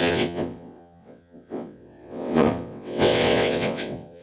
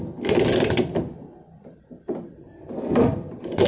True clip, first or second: second